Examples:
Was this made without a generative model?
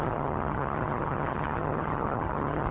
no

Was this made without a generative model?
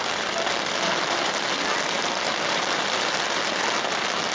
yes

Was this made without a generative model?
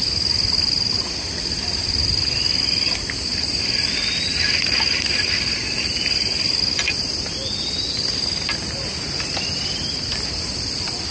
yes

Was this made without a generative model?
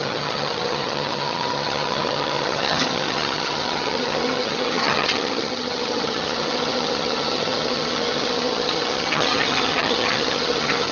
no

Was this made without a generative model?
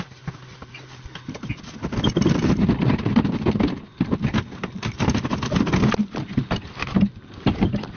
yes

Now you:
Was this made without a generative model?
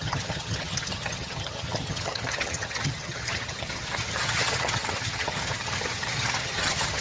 no